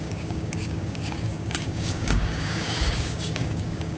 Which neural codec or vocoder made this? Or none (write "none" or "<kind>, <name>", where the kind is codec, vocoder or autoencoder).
codec, DAC